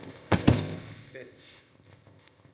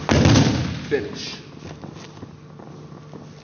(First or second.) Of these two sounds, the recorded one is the second